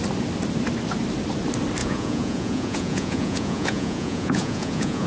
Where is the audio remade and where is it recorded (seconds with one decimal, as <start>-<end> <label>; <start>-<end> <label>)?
0.0-1.8 recorded; 1.8-5.1 remade